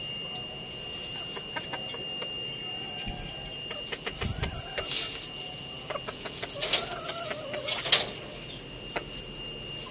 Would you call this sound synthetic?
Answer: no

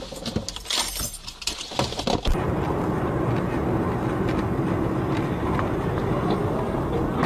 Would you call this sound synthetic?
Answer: no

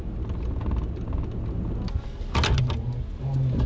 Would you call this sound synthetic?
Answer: no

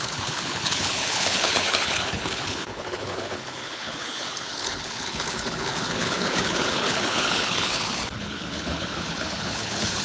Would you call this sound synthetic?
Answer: yes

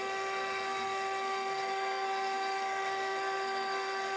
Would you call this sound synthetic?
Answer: yes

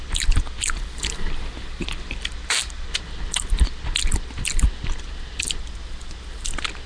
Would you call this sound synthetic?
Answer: no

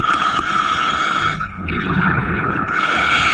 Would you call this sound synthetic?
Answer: yes